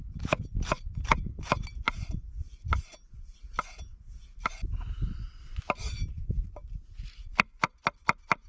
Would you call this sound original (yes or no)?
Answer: yes